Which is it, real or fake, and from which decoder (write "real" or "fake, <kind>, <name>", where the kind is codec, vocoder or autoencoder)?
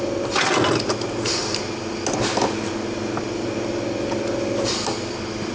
real